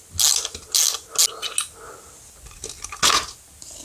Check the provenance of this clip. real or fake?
real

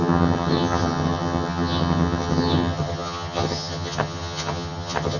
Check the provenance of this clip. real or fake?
fake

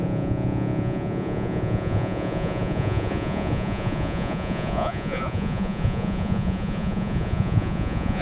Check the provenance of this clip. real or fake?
fake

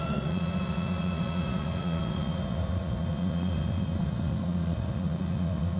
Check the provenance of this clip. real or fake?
fake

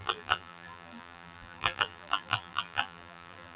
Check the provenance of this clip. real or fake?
fake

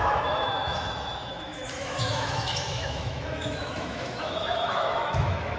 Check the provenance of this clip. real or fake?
fake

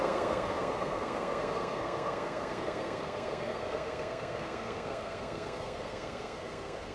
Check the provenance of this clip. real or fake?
fake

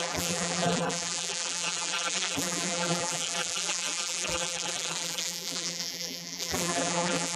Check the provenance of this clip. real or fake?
fake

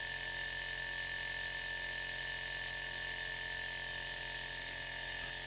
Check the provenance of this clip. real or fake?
real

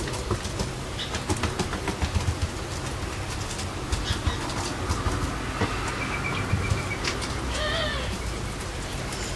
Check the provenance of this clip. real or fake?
real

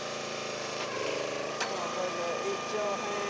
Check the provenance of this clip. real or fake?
fake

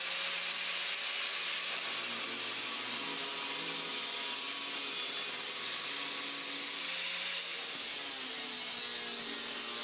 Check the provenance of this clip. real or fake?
real